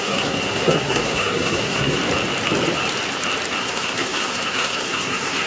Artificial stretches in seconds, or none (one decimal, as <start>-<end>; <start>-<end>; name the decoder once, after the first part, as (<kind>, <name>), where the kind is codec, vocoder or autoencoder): 0.0-2.0 (codec, SNAC); 3.6-5.5